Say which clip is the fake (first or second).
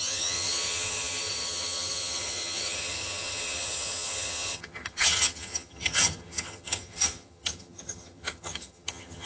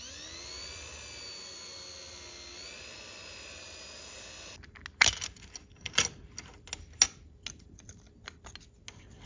first